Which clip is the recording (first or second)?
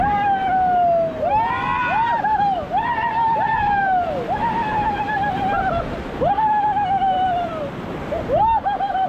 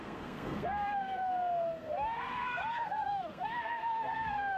first